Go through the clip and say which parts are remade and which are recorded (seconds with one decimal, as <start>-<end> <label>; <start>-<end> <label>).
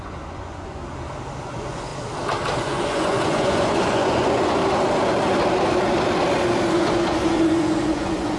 0.0-0.8 remade; 0.8-1.4 recorded; 1.4-1.9 remade; 1.9-2.6 recorded; 2.6-4.6 remade; 4.6-6.7 recorded; 6.7-8.4 remade